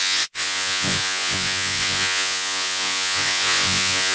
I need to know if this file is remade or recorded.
remade